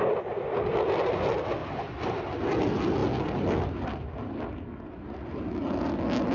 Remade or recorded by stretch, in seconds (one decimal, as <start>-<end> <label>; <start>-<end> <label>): 0.0-6.3 recorded